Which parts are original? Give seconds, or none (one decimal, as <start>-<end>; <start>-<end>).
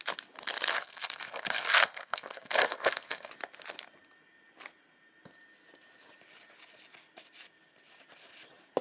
0.0-0.7; 3.3-8.8